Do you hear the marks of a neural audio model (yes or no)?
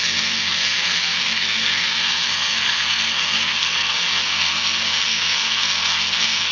yes